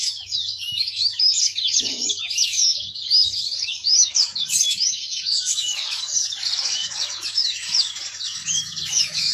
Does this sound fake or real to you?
fake